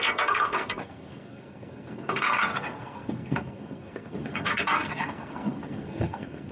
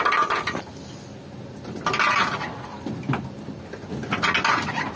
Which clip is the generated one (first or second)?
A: first